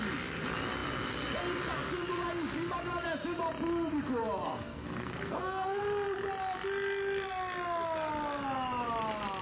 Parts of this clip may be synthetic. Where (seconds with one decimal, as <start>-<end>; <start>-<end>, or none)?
4.5-5.8